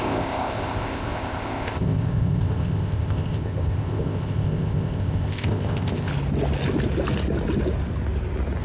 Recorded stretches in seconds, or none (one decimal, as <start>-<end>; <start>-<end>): 6.1-8.6